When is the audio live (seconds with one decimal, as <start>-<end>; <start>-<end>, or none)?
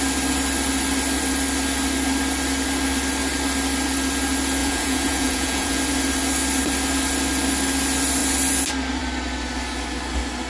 0.0-4.6; 5.8-10.5